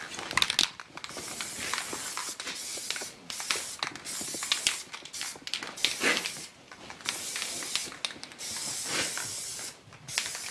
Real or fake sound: real